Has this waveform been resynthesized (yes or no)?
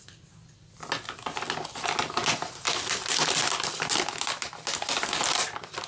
no